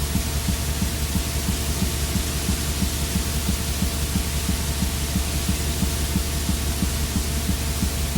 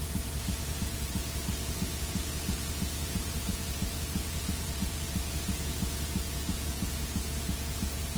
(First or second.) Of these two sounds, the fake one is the second